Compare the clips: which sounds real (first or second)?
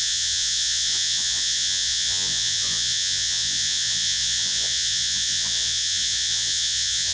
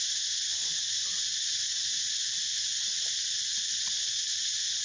second